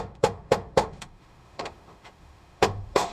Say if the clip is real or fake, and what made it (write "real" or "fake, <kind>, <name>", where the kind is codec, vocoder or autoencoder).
fake, autoencoder, DAC-VAE